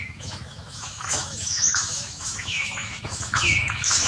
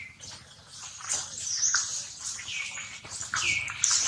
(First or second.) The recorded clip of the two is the second